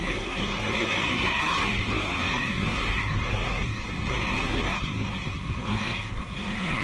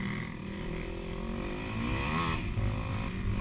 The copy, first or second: first